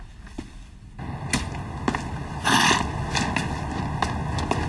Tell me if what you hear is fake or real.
real